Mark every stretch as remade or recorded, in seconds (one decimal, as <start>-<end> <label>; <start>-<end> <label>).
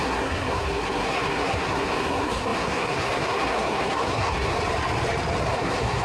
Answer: 0.0-4.6 remade; 4.6-5.4 recorded; 5.4-6.0 remade